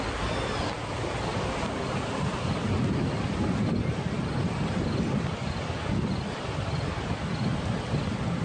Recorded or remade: recorded